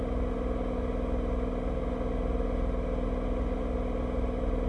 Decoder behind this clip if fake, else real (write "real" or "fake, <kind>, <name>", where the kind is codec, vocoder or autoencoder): real